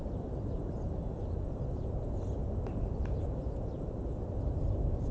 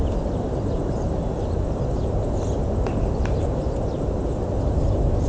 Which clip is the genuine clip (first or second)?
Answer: second